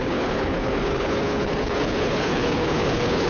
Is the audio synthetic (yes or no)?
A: yes